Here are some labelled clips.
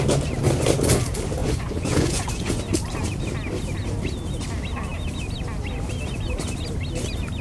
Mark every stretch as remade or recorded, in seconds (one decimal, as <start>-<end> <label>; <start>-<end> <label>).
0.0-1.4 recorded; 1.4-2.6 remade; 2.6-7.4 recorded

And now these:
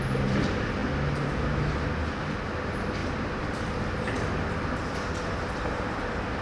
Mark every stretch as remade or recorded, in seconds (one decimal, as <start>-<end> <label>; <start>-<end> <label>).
0.0-6.4 recorded

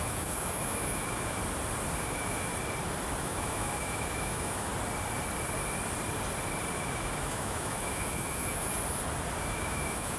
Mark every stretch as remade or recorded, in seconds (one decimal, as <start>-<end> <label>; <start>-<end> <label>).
0.0-1.4 remade; 1.4-2.0 recorded; 2.0-2.5 remade; 2.5-3.2 recorded; 3.2-4.7 remade; 4.7-6.7 recorded; 6.7-8.7 remade; 8.7-9.4 recorded; 9.4-10.2 remade